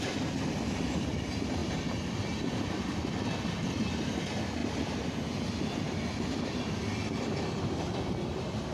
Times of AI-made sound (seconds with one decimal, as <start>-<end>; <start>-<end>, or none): none